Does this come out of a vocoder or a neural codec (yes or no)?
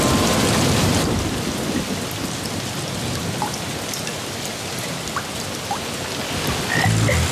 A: no